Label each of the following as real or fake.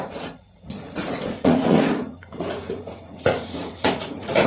fake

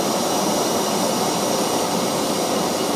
real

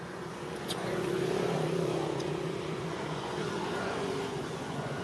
fake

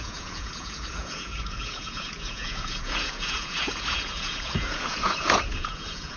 fake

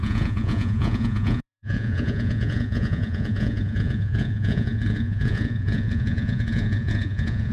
fake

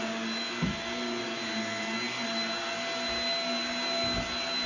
real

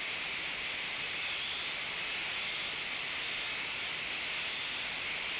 real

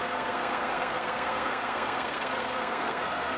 fake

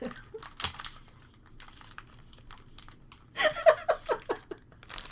real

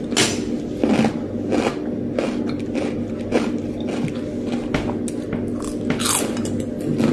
real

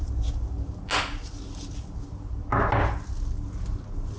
real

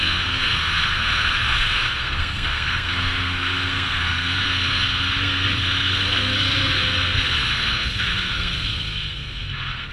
fake